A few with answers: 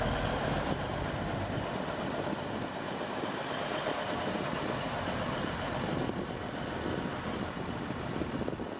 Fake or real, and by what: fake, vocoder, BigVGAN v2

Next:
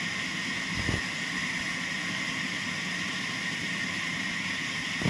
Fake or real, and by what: real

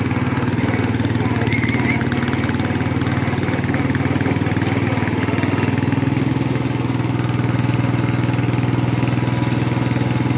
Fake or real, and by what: real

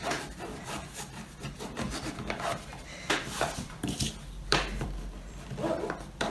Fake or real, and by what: fake, vocoder, BigVGAN v2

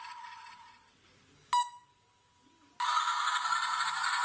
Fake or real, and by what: real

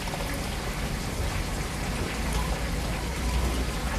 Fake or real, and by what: real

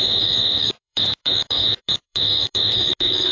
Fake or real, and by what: fake, autoencoder, DAC-VAE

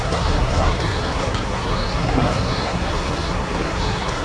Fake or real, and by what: fake, codec, SNAC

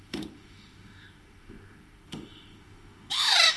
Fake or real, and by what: fake, autoencoder, DAC-VAE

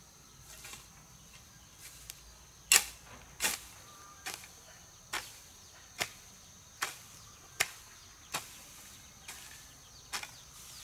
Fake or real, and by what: real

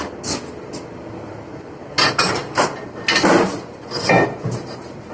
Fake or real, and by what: real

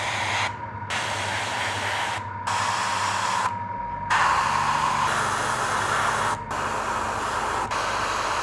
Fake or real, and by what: real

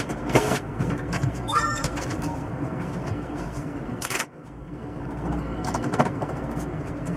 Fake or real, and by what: fake, codec, SNAC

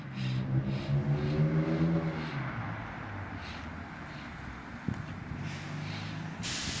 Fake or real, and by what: real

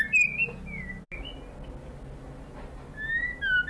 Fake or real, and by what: real